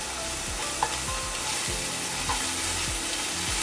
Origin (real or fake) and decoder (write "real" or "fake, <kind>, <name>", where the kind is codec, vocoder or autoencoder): real